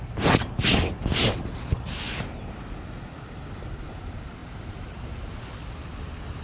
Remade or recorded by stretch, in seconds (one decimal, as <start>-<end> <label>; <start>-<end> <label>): 0.0-6.4 recorded